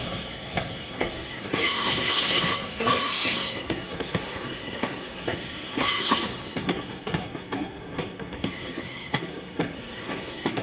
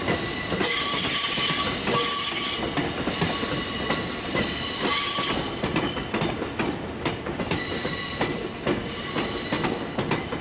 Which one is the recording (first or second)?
second